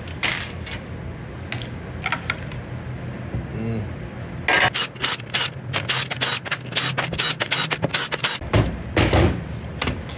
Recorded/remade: recorded